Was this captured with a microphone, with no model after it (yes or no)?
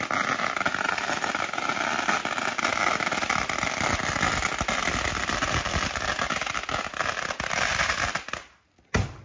yes